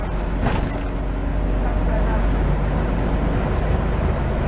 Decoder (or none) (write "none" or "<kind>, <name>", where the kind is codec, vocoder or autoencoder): none